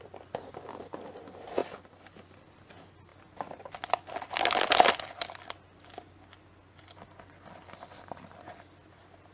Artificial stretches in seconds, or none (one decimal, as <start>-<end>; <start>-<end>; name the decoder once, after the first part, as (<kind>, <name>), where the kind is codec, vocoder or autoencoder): none